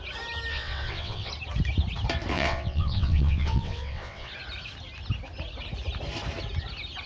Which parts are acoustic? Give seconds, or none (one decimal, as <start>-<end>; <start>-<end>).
0.0-0.5; 1.3-2.3; 4.3-7.1